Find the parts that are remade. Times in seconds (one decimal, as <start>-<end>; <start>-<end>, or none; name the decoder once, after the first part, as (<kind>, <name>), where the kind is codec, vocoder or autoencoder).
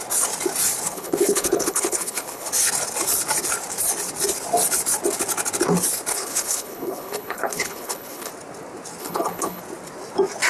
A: 0.9-2.5 (codec, HILCodec); 6.1-8.3; 9.0-9.6